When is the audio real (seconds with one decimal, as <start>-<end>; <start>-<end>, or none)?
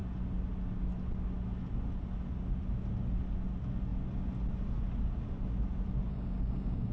0.0-6.1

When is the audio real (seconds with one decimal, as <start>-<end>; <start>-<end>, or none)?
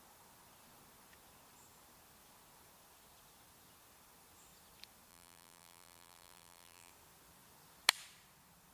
0.0-5.1; 6.9-8.7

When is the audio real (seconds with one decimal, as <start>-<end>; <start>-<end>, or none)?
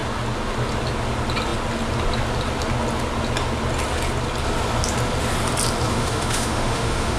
0.0-5.9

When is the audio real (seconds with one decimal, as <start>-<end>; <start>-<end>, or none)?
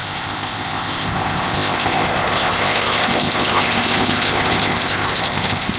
none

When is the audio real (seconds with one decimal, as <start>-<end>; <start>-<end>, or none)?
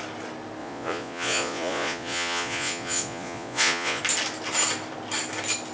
0.0-0.6; 4.0-5.7